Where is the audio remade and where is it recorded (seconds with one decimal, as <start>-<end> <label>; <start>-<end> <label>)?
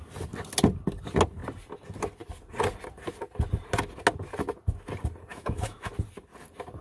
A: 0.0-5.3 recorded; 5.3-5.9 remade; 5.9-6.8 recorded